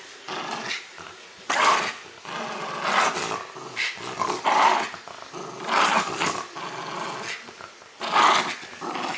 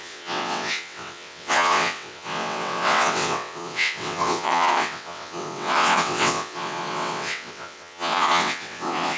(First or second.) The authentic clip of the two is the first